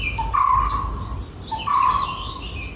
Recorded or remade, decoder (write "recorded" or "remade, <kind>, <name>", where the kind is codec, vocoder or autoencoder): recorded